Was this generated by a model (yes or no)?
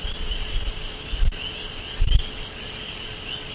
no